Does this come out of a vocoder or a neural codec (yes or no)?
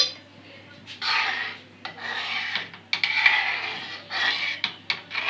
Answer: no